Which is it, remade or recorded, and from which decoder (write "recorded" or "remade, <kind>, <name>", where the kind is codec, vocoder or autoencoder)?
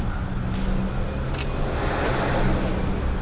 recorded